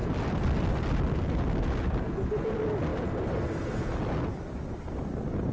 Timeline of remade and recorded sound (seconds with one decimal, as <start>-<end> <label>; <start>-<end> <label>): 0.0-5.5 recorded